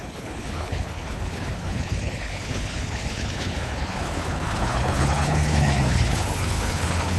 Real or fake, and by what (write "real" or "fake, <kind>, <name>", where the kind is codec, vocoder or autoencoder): fake, codec, HILCodec